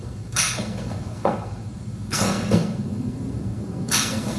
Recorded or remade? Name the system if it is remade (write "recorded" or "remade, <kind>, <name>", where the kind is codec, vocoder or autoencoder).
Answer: remade, codec, SNAC